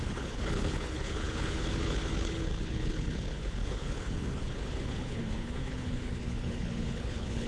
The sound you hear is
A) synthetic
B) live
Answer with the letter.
A